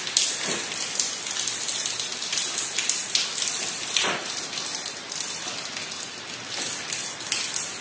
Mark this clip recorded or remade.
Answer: recorded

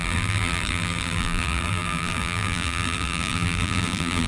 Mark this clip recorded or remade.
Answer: remade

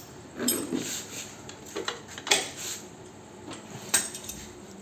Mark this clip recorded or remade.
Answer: remade